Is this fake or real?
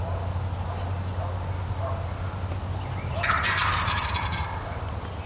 real